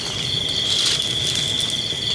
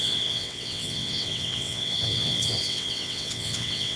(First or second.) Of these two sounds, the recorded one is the first